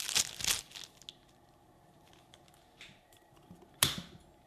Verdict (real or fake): real